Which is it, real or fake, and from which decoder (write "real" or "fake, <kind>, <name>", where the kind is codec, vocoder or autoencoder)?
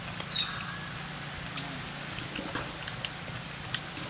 real